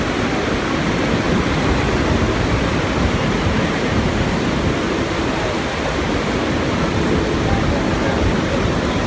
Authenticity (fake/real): real